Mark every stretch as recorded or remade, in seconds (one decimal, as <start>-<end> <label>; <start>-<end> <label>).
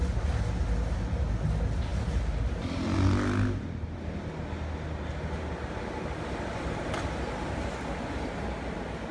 0.0-9.1 recorded